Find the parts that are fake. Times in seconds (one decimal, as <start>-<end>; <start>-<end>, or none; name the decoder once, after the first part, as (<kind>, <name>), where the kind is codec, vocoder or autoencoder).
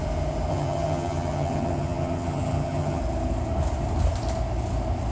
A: 0.5-3.0 (vocoder, HiFi-GAN)